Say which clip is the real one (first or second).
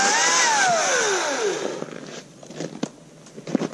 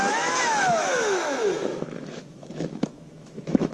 first